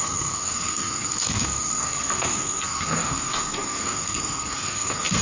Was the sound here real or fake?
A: fake